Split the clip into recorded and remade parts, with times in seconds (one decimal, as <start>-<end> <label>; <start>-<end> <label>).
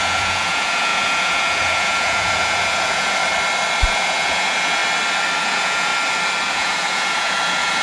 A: 0.0-3.2 remade; 3.2-3.8 recorded; 3.8-4.8 remade; 4.8-5.4 recorded; 5.4-5.9 remade; 5.9-6.5 recorded; 6.5-7.8 remade